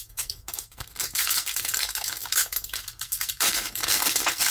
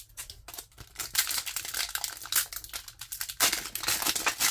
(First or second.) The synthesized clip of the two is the first